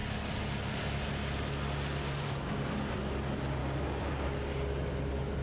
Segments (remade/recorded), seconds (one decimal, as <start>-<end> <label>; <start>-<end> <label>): 0.0-3.6 recorded; 3.6-4.1 remade; 4.1-5.4 recorded